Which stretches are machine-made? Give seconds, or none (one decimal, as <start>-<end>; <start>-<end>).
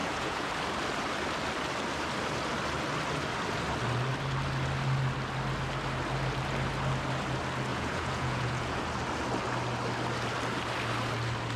0.0-0.5; 7.7-8.8